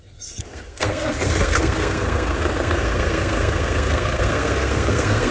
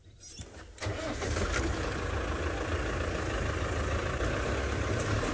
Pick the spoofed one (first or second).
first